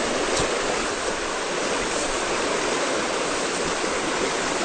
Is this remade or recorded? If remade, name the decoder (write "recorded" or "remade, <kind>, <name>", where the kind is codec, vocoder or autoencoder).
recorded